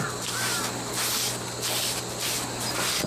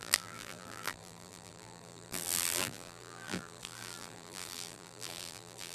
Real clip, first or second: first